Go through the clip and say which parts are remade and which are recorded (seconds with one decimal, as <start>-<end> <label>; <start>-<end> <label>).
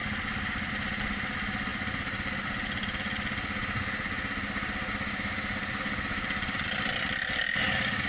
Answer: 0.0-8.1 recorded